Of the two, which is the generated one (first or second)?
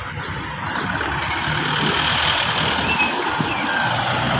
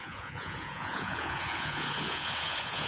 second